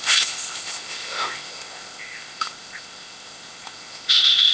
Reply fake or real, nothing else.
fake